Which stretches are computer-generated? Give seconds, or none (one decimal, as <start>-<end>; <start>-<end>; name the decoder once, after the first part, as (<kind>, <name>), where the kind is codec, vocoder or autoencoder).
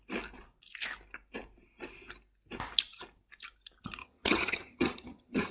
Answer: 4.0-5.5 (vocoder, HiFi-GAN)